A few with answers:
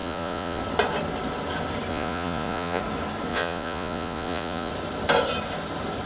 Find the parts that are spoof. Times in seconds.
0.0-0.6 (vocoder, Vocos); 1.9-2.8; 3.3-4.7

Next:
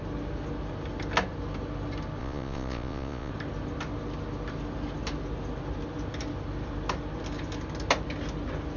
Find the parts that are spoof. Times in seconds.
2.2-3.3 (vocoder, Vocos)

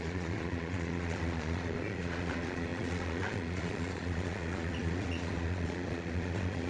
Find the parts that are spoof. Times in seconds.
0.0-6.7 (vocoder, Vocos)

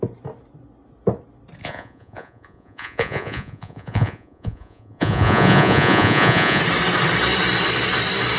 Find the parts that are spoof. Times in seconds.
1.6-6.6 (vocoder, Vocos)

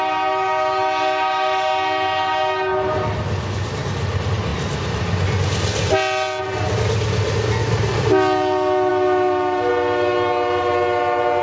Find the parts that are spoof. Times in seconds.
none

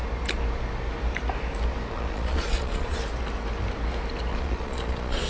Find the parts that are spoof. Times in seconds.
1.9-3.0 (vocoder, Vocos); 4.3-5.3

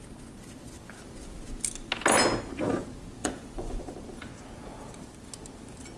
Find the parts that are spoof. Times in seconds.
3.2-3.8 (vocoder, Vocos)